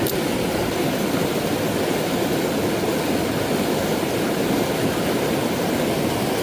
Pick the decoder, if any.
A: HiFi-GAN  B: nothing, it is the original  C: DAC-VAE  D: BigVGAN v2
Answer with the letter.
B